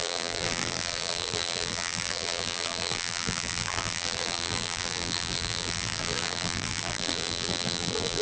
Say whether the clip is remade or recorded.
remade